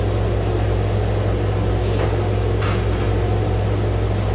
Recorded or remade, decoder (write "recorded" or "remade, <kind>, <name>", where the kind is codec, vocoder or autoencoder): recorded